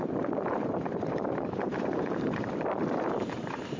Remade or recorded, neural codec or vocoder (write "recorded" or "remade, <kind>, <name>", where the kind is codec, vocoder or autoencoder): remade, vocoder, BigVGAN v2